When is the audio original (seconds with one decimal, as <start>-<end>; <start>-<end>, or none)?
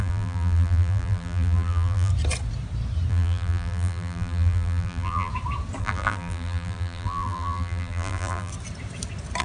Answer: 2.1-3.1; 5.3-5.8; 8.5-9.4